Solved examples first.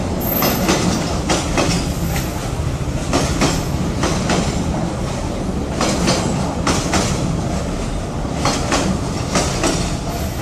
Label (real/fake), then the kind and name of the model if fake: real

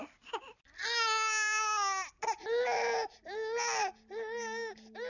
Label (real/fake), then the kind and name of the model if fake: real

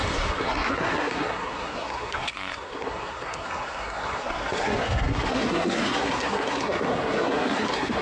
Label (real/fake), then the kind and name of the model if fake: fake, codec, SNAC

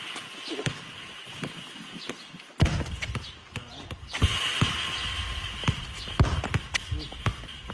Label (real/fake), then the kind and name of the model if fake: real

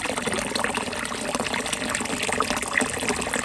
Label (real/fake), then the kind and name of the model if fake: real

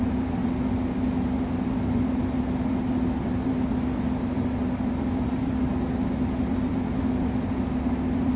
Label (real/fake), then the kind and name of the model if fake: real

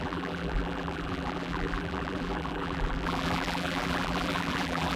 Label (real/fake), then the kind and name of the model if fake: fake, vocoder, BigVGAN v2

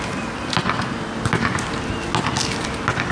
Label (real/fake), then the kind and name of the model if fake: real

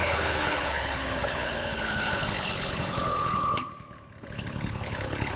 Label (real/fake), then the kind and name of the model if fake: fake, codec, HILCodec